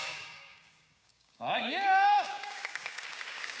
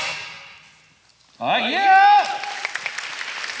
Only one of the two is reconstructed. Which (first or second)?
first